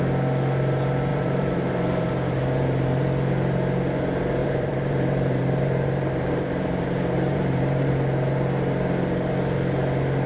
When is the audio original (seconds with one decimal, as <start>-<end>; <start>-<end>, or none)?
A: 0.0-1.1; 3.0-4.4; 7.9-10.3